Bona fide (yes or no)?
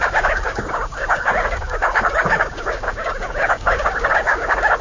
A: no